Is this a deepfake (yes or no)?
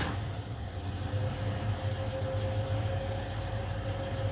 no